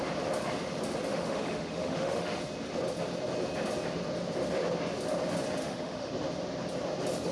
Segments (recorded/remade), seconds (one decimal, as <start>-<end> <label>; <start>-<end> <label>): 0.0-1.1 recorded; 1.1-2.4 remade; 2.4-5.6 recorded; 5.6-6.1 remade; 6.1-7.3 recorded